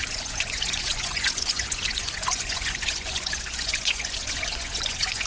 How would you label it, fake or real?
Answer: fake